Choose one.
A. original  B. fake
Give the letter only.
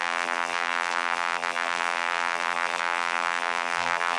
B